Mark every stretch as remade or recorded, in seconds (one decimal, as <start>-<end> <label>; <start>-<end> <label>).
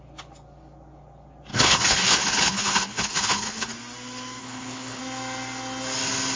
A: 0.0-1.5 recorded; 1.5-3.7 remade; 3.7-4.4 recorded; 4.4-5.0 remade; 5.0-6.4 recorded